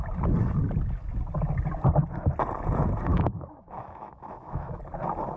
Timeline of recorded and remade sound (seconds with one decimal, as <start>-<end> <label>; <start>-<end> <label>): 0.0-3.1 recorded; 3.1-4.8 remade; 4.8-5.4 recorded

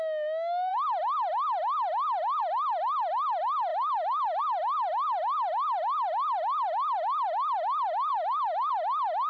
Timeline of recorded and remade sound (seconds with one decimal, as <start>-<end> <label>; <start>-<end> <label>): 0.0-3.7 recorded; 3.7-4.4 remade; 4.4-8.1 recorded; 8.1-8.7 remade; 8.7-9.3 recorded

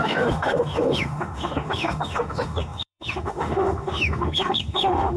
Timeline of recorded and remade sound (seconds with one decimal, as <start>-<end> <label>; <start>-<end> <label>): 0.0-5.2 remade

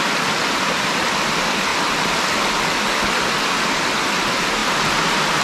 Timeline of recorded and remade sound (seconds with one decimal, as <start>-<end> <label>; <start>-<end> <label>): 0.0-5.4 recorded